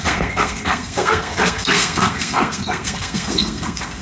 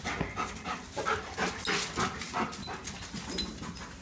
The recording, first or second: second